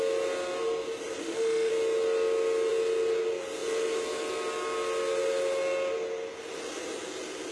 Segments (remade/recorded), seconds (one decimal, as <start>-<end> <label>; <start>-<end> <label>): 0.0-1.2 recorded; 1.2-1.7 remade; 1.7-7.5 recorded